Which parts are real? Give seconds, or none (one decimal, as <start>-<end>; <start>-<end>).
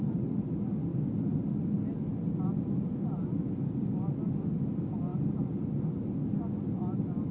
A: 0.0-7.3